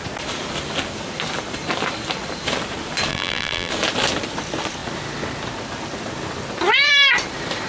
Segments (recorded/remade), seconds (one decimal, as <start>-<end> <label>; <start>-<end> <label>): 0.0-3.1 recorded; 3.1-3.7 remade; 3.7-7.7 recorded